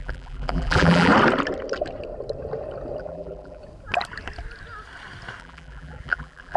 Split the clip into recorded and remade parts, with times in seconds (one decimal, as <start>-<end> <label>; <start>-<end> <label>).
0.0-1.1 remade; 1.1-3.0 recorded; 3.0-3.6 remade; 3.6-5.4 recorded; 5.4-6.6 remade